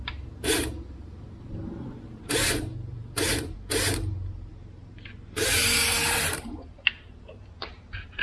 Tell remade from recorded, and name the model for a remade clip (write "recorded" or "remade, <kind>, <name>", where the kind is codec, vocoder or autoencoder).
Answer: remade, vocoder, BigVGAN v2